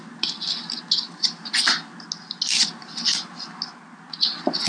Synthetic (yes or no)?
no